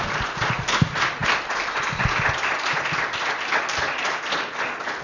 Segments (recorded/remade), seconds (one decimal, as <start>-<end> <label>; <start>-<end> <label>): 0.0-5.0 recorded